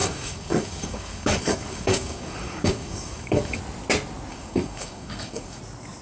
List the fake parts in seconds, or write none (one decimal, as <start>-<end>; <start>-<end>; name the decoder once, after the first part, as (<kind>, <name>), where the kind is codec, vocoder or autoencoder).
0.0-3.6 (codec, DAC); 4.3-5.6